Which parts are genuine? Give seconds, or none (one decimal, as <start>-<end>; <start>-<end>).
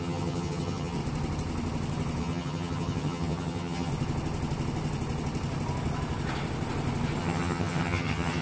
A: 1.0-2.2; 3.9-7.2